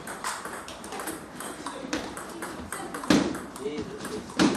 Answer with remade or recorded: remade